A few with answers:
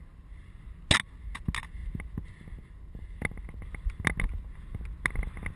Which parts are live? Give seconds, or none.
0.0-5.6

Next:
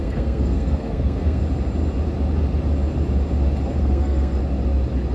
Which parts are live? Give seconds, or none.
1.4-3.8; 4.4-5.1